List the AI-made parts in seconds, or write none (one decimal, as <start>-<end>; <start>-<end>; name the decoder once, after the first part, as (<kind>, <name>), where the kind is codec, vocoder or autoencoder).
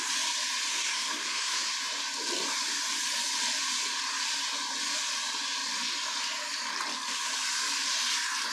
0.7-1.7 (codec, SNAC)